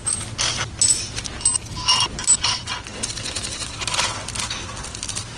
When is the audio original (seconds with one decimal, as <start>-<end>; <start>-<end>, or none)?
0.0-5.4